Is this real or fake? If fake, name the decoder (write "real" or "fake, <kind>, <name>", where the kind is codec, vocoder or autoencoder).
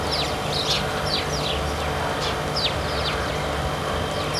real